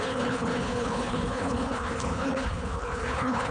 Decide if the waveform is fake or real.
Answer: fake